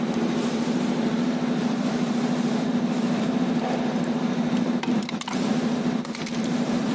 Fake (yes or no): yes